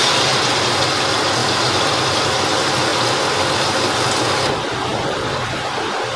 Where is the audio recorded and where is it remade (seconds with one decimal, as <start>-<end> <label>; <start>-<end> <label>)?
0.0-1.4 recorded; 1.4-2.0 remade; 2.0-6.2 recorded